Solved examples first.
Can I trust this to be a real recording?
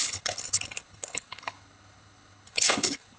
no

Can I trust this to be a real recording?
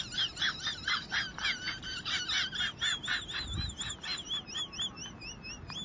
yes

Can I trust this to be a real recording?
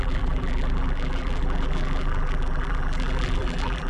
no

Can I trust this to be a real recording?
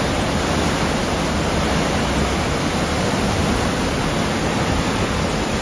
yes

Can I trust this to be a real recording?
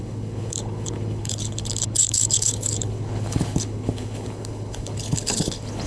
no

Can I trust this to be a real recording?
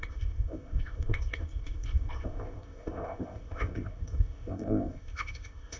no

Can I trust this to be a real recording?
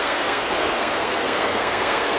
no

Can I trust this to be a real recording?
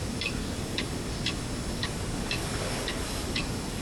no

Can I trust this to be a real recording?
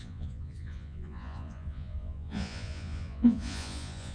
no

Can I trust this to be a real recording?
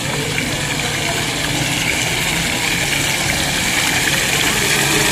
yes